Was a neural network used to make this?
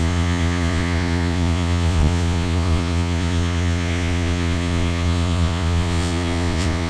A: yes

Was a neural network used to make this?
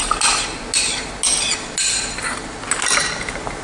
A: no